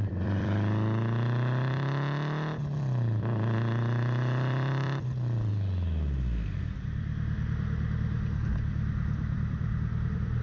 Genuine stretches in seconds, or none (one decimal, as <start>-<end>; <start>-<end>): 5.5-6.6